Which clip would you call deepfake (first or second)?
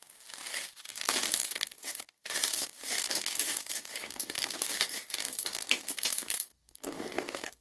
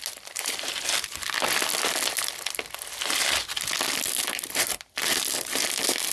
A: first